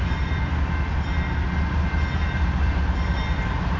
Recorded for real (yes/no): yes